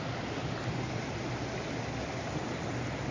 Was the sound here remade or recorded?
recorded